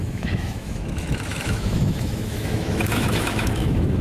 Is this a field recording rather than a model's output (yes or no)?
no